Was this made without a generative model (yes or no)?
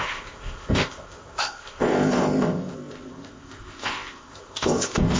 no